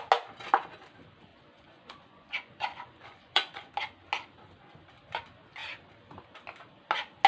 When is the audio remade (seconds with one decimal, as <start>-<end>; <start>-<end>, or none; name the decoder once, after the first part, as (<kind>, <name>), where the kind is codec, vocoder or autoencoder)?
1.3-3.7 (vocoder, Vocos)